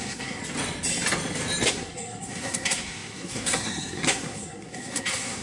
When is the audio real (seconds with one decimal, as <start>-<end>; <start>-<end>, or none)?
0.4-1.7